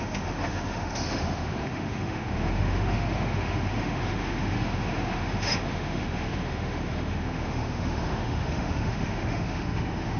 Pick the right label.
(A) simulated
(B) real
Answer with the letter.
A